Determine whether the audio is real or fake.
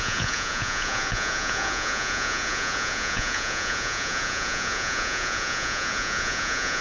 fake